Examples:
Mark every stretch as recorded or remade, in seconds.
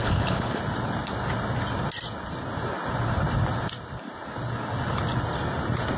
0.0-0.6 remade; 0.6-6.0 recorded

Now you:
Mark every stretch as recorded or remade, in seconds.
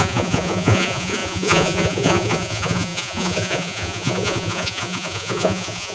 0.0-5.9 remade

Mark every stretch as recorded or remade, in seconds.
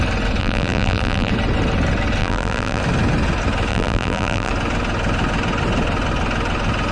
0.0-0.4 recorded; 0.4-1.3 remade; 1.3-2.2 recorded; 2.2-2.8 remade; 2.8-3.7 recorded; 3.7-4.5 remade; 4.5-6.9 recorded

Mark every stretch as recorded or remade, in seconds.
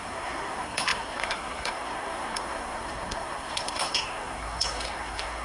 0.0-5.4 remade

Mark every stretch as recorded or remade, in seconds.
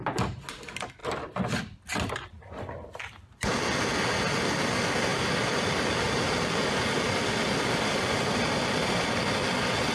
0.0-1.0 recorded; 1.0-3.8 remade; 3.8-5.1 recorded; 5.1-9.0 remade; 9.0-9.9 recorded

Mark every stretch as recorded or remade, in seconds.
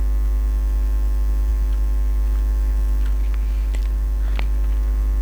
0.0-5.2 recorded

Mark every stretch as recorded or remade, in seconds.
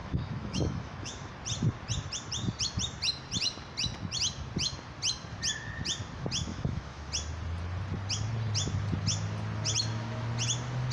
0.0-1.3 remade; 1.3-6.5 recorded; 6.5-7.1 remade; 7.1-10.9 recorded